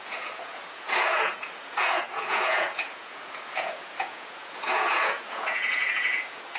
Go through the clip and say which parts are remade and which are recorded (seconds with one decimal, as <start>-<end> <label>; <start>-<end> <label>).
0.0-6.6 remade